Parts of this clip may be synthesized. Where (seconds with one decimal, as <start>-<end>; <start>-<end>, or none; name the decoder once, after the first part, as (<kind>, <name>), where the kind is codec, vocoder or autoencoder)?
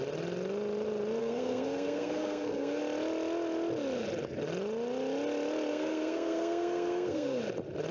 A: 1.2-2.8 (codec, SNAC); 5.7-7.4